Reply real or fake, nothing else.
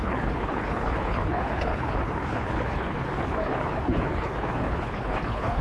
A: fake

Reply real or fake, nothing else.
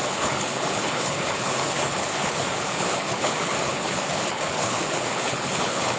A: fake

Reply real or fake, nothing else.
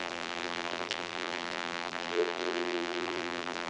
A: fake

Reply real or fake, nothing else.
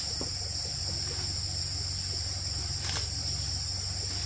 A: real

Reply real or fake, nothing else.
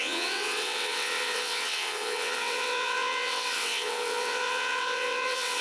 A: fake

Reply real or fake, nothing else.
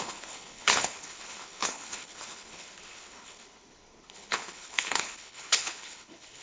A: fake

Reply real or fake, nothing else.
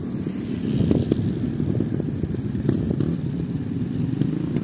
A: real